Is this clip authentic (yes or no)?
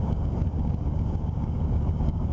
no